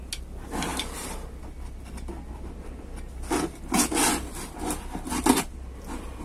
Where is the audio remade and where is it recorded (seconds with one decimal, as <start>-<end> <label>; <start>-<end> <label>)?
0.0-6.2 recorded